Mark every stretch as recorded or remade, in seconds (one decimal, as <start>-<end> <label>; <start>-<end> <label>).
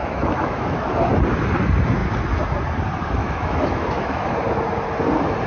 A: 0.0-0.9 remade; 0.9-3.2 recorded; 3.2-4.3 remade; 4.3-5.5 recorded